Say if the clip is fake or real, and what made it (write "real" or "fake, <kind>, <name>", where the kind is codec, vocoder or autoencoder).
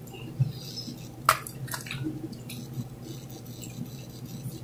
real